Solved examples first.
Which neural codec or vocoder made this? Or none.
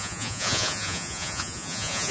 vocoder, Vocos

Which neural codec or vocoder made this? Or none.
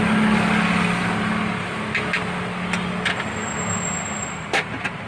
none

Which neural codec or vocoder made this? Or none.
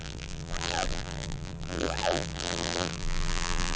vocoder, BigVGAN v2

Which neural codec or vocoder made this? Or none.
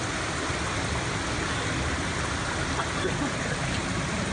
none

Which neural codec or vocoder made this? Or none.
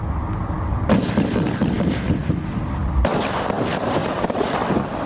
none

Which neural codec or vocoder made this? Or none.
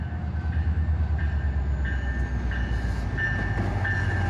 none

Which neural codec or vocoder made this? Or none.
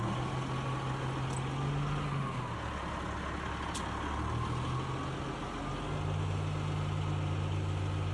none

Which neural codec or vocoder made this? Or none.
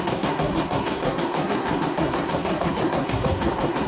codec, SNAC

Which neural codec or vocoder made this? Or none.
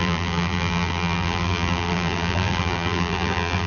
vocoder, BigVGAN v2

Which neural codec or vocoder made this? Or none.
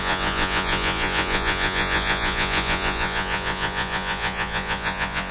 vocoder, Vocos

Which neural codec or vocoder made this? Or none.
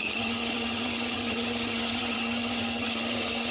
vocoder, HiFi-GAN